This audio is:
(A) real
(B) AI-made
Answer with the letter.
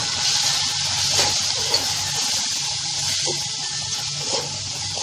A